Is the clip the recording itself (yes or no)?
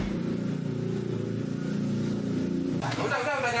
yes